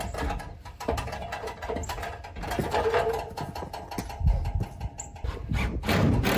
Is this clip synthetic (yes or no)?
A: no